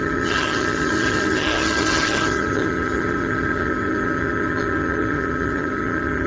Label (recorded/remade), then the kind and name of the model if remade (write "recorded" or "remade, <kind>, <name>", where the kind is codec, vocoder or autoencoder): remade, vocoder, HiFi-GAN